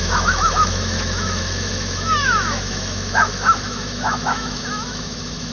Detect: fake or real fake